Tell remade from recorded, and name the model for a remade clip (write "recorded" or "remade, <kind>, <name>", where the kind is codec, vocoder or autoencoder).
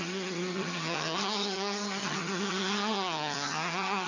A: remade, vocoder, HiFi-GAN